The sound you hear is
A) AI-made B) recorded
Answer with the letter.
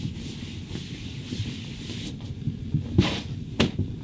B